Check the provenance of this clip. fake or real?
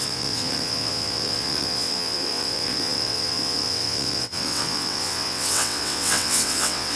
fake